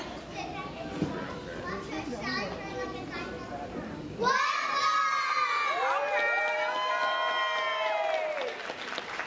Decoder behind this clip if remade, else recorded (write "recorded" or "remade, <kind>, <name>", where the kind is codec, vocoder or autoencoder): recorded